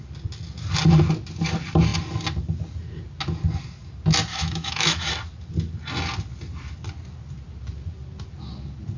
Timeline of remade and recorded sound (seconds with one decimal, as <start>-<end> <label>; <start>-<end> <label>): 0.0-4.3 recorded; 4.3-5.1 remade; 5.1-9.0 recorded